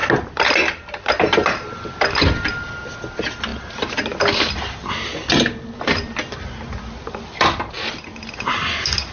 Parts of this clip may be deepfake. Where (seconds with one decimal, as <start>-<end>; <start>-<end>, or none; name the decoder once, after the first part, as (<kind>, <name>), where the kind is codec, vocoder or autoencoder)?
none